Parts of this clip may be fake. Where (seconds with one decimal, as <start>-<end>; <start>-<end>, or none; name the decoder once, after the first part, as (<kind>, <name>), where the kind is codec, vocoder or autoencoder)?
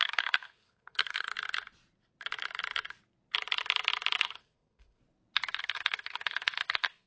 0.0-1.3 (codec, SNAC); 4.2-5.0; 5.6-7.1